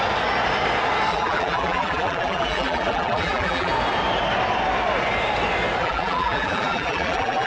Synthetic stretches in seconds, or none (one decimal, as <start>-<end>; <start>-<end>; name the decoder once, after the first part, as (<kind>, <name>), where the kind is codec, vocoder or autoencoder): 1.1-3.7 (vocoder, BigVGAN v2); 5.8-7.5